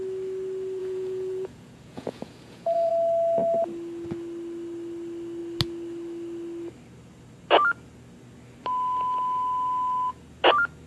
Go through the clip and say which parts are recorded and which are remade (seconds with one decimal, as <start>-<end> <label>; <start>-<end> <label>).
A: 0.0-0.8 recorded; 0.8-2.9 remade; 2.9-10.9 recorded